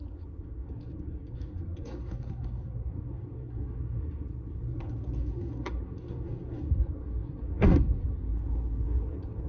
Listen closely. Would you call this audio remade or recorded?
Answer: remade